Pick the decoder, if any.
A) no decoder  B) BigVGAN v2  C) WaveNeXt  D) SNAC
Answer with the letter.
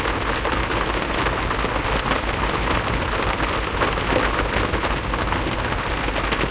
A